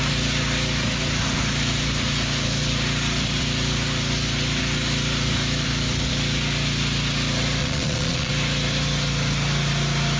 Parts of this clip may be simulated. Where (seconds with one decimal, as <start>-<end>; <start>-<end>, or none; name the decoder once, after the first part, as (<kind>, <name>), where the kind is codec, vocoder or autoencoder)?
7.6-8.3 (vocoder, Vocos)